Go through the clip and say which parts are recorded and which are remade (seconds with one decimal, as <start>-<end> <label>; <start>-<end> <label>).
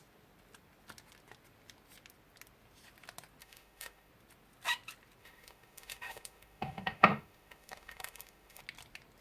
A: 0.0-3.4 recorded; 3.4-4.1 remade; 4.1-5.2 recorded; 5.2-8.6 remade; 8.6-9.2 recorded